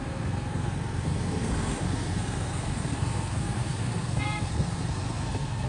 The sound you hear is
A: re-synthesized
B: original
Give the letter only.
A